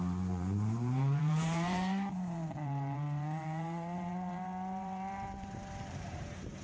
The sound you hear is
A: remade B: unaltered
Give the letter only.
A